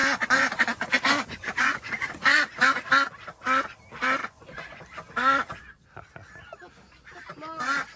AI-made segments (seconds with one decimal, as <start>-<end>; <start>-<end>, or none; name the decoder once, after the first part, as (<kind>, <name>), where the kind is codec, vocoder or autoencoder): 0.0-2.9 (vocoder, Vocos); 4.2-4.8